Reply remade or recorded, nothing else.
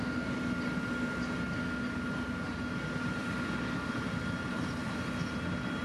recorded